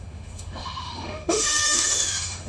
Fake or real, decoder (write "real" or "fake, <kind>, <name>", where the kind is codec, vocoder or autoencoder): fake, autoencoder, DAC-VAE